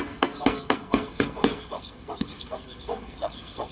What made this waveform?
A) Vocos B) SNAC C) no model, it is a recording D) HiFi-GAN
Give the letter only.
B